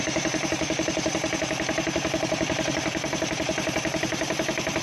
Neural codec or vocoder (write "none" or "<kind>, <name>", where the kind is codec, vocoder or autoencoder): vocoder, BigVGAN v2